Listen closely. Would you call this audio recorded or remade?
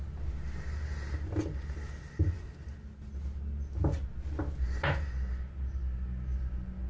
recorded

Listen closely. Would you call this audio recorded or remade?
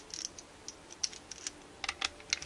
recorded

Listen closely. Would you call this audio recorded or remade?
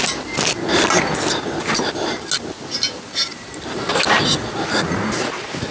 recorded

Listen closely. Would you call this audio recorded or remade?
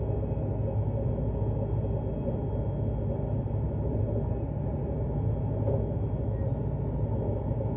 recorded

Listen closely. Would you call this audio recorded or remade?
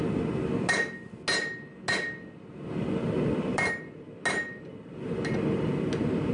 recorded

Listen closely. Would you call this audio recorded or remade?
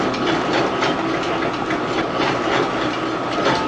recorded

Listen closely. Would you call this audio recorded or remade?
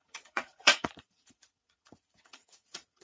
remade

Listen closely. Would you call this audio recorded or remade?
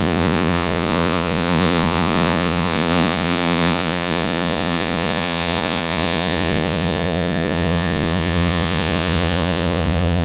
remade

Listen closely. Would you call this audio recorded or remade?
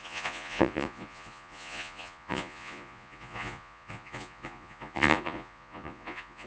remade